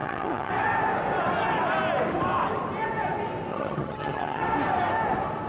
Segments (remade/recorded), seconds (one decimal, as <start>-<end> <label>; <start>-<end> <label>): 0.0-0.5 remade; 0.5-3.5 recorded; 3.5-4.4 remade; 4.4-5.5 recorded